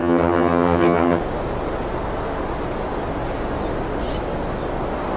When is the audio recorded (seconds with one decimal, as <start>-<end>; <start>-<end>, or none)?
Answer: 1.2-5.2